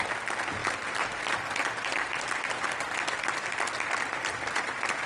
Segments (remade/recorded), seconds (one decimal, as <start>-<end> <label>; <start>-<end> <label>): 0.0-5.1 recorded